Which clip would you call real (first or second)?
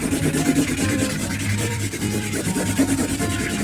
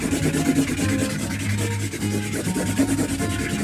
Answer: second